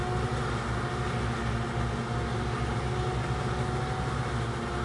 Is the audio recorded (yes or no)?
yes